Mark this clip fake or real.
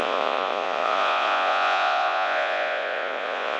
fake